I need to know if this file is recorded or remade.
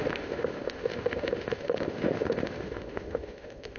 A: remade